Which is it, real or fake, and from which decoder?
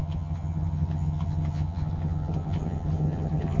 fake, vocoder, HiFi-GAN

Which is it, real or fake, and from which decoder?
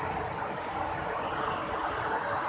real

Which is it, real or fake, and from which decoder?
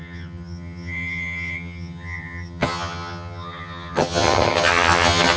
fake, vocoder, HiFi-GAN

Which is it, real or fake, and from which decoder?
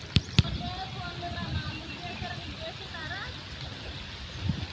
real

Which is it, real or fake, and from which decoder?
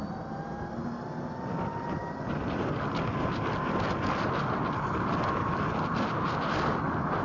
real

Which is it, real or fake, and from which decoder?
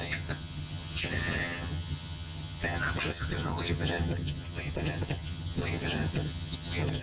fake, vocoder, HiFi-GAN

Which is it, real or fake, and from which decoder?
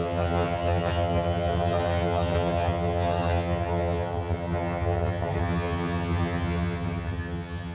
fake, vocoder, HiFi-GAN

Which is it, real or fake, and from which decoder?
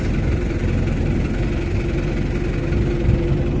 real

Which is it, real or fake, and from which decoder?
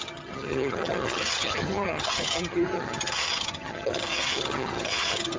fake, vocoder, HiFi-GAN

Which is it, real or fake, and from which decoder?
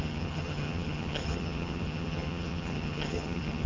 fake, vocoder, HiFi-GAN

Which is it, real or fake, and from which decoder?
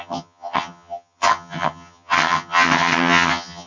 fake, vocoder, HiFi-GAN